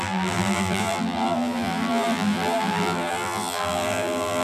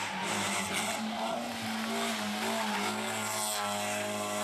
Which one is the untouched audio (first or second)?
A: second